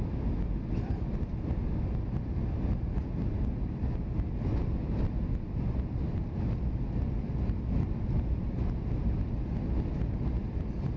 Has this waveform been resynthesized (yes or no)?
no